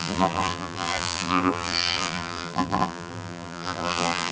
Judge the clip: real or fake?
fake